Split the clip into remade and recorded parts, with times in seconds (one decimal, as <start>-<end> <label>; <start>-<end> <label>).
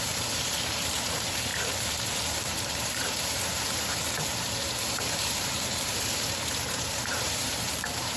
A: 0.0-8.2 remade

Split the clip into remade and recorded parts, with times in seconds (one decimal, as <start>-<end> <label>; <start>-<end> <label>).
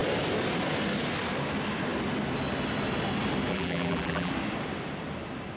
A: 0.0-3.5 recorded; 3.5-4.3 remade; 4.3-5.6 recorded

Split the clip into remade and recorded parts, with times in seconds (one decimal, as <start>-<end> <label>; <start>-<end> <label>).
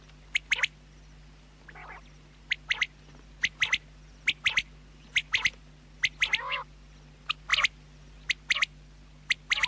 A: 0.0-9.7 recorded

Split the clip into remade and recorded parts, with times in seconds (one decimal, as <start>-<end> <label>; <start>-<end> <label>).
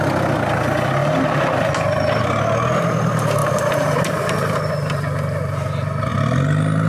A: 0.0-1.0 recorded; 1.0-2.2 remade; 2.2-3.4 recorded; 3.4-4.7 remade; 4.7-6.9 recorded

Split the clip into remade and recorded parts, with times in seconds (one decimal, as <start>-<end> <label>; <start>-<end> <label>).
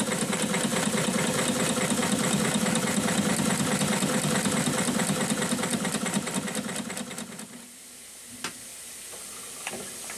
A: 0.0-0.7 recorded; 0.7-1.2 remade; 1.2-5.7 recorded; 5.7-6.3 remade; 6.3-10.2 recorded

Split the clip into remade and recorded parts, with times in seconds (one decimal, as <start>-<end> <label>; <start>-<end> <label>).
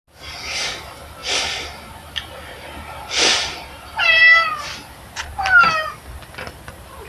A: 0.0-7.1 recorded